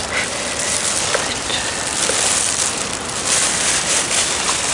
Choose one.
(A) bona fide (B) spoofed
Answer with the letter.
B